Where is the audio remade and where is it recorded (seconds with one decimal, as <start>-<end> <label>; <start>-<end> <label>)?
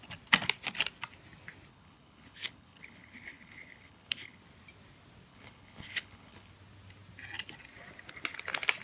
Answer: 0.0-1.7 recorded; 1.7-4.4 remade; 4.4-5.3 recorded; 5.3-6.5 remade; 6.5-8.8 recorded